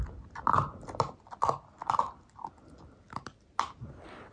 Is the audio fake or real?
real